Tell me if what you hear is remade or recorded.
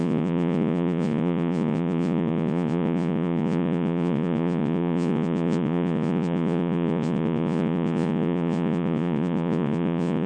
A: remade